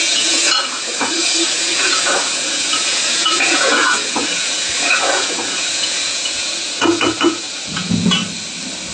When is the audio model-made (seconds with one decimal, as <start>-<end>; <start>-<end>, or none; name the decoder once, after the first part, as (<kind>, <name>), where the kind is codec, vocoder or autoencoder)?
0.0-8.2 (vocoder, Vocos)